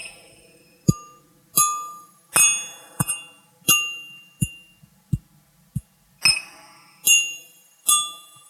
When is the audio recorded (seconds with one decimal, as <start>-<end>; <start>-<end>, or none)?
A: 0.0-8.5